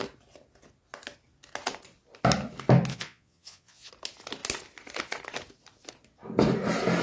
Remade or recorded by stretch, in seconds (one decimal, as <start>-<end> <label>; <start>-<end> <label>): 0.0-2.9 recorded; 2.9-3.9 remade; 3.9-7.0 recorded

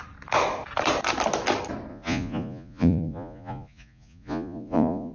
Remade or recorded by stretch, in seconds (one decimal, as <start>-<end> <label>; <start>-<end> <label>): 0.0-1.9 recorded; 1.9-5.1 remade

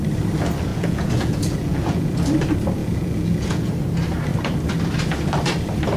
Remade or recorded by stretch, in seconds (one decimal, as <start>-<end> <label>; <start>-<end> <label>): 0.0-0.7 recorded; 0.7-2.2 remade; 2.2-2.8 recorded; 2.8-3.7 remade; 3.7-6.0 recorded